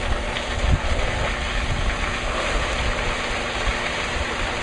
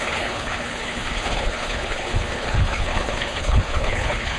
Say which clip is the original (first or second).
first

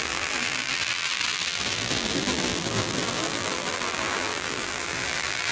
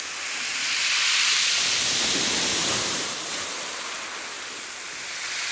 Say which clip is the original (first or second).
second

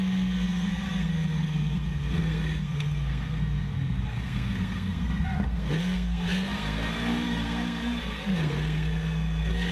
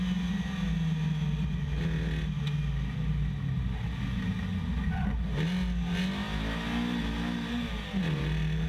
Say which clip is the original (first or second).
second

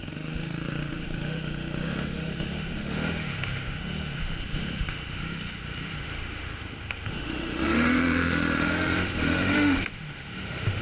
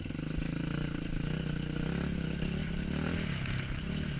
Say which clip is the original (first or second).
second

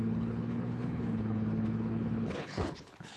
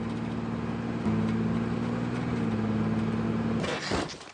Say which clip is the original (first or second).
second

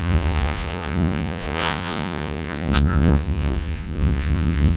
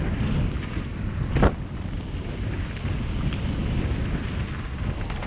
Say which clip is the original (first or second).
second